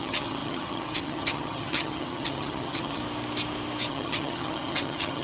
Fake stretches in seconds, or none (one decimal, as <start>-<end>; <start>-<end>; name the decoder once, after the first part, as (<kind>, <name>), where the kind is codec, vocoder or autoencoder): 0.0-3.0 (vocoder, HiFi-GAN); 3.9-5.2